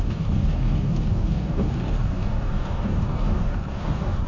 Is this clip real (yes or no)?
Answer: no